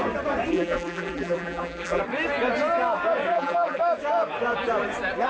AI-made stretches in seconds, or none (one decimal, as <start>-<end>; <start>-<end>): 0.5-2.0; 3.3-3.8